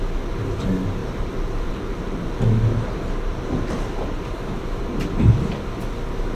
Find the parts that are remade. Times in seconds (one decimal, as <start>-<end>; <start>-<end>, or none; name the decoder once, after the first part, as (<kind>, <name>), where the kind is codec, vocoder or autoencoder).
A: 1.0-4.8 (vocoder, BigVGAN v2)

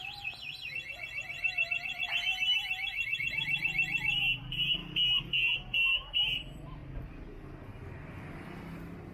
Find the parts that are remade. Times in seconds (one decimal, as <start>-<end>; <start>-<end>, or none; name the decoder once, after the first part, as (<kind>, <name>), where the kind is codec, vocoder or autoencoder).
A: 0.0-2.3 (vocoder, BigVGAN v2); 3.2-4.8; 5.3-6.8; 8.3-9.1

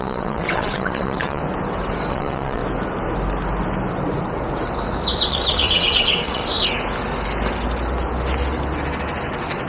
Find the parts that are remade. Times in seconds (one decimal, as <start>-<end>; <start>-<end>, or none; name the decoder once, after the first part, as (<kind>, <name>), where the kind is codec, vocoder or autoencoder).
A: 0.0-1.4 (vocoder, WaveNeXt); 2.1-2.6; 5.3-6.4

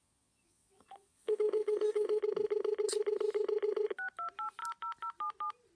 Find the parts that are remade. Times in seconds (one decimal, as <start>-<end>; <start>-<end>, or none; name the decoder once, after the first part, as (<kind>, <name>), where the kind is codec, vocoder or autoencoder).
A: 0.0-2.2 (vocoder, Vocos)

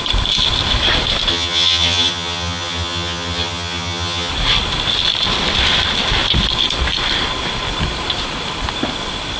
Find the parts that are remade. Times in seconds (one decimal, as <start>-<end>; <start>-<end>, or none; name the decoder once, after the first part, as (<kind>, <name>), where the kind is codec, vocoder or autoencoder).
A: 1.3-4.3 (vocoder, HiFi-GAN)

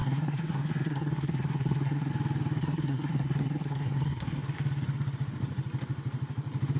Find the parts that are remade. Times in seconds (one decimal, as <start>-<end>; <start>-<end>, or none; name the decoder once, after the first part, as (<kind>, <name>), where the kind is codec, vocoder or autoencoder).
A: 0.0-2.1 (codec, SNAC); 2.6-4.4

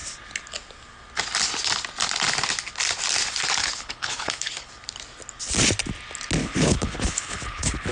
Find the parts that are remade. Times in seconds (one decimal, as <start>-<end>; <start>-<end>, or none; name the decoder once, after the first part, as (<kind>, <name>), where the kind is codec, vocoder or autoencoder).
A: 3.6-4.7 (codec, HILCodec); 6.4-7.9

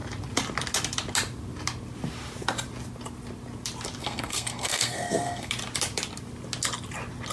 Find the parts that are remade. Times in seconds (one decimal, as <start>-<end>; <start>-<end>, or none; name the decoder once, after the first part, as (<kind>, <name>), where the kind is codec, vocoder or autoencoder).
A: 4.0-5.5 (codec, SNAC)